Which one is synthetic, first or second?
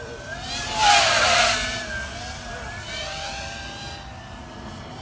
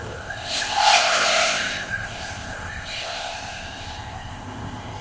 second